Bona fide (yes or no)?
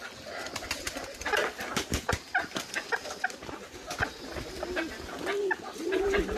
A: yes